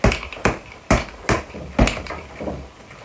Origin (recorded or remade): recorded